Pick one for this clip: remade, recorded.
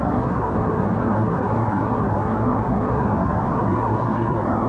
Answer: remade